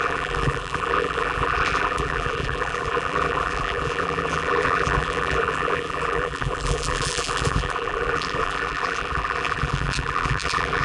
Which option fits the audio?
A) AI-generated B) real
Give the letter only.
A